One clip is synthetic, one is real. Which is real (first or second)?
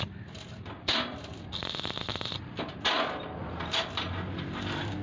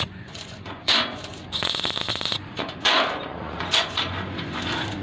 first